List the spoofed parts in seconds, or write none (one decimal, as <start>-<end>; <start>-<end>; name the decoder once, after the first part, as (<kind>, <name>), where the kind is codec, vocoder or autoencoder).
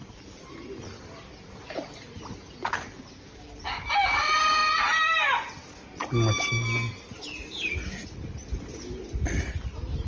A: none